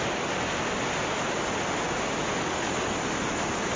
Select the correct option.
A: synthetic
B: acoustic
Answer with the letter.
B